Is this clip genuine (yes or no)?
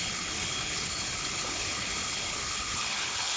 no